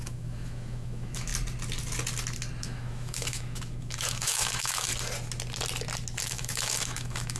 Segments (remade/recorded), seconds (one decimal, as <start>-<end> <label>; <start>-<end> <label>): 0.0-1.3 remade; 1.3-2.6 recorded; 2.6-4.9 remade; 4.9-6.2 recorded; 6.2-7.4 remade